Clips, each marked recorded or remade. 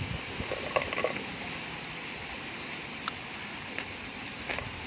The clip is recorded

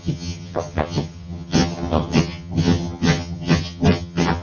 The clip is remade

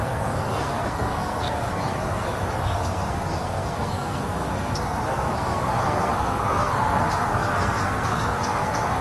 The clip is remade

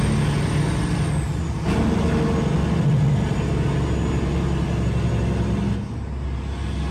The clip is recorded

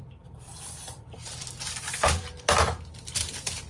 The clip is remade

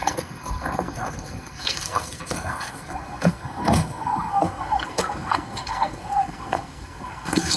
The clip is remade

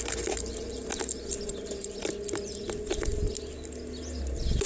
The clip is recorded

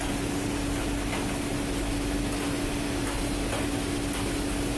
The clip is recorded